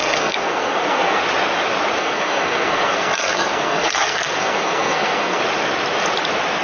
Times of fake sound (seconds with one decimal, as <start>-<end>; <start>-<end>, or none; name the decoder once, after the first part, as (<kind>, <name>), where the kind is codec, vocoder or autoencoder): 0.0-1.2 (codec, SNAC); 2.0-5.4